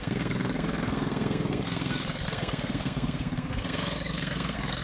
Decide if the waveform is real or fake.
fake